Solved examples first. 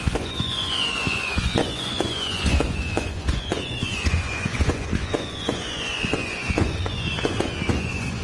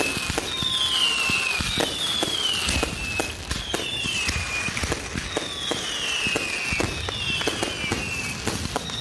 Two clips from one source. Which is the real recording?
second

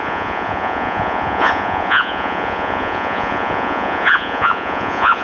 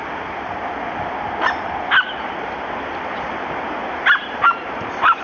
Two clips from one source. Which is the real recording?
second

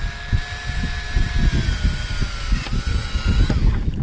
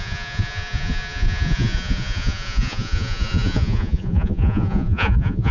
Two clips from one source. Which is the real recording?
first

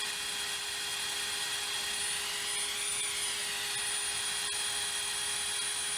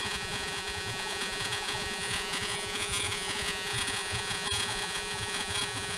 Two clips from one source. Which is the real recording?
first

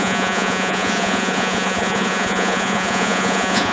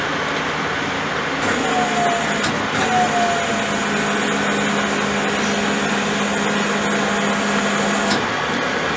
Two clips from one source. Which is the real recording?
second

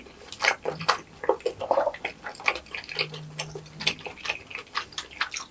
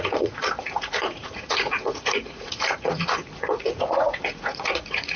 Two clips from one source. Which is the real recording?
first